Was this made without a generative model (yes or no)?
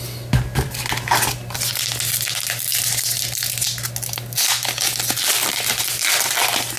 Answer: yes